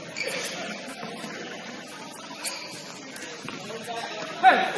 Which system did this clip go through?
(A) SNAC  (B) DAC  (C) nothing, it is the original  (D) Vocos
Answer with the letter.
C